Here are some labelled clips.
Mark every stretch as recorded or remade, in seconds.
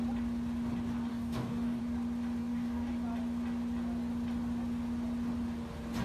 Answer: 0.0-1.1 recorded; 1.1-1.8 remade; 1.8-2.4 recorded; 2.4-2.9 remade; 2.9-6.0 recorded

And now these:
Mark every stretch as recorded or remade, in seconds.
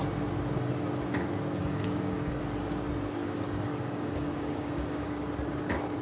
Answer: 0.0-1.6 recorded; 1.6-2.4 remade; 2.4-3.2 recorded; 3.2-5.1 remade; 5.1-6.0 recorded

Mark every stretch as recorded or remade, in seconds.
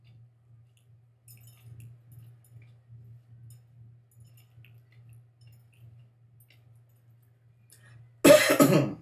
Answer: 0.0-9.0 recorded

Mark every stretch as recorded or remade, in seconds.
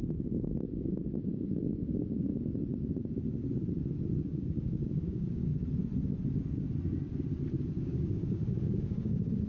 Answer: 0.0-2.3 remade; 2.3-4.2 recorded; 4.2-5.5 remade; 5.5-7.8 recorded; 7.8-9.5 remade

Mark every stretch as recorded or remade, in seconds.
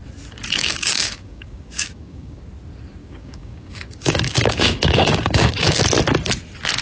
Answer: 0.0-0.6 recorded; 0.6-2.4 remade; 2.4-3.0 recorded; 3.0-5.8 remade; 5.8-6.8 recorded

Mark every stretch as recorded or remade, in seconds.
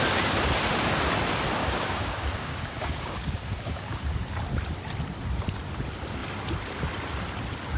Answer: 0.0-1.6 recorded; 1.6-4.0 remade; 4.0-7.8 recorded